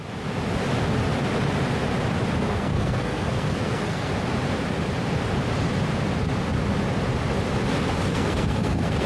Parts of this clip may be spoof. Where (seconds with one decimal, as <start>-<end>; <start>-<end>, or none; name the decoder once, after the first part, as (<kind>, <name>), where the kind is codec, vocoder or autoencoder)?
2.4-4.1 (codec, SNAC); 8.1-9.1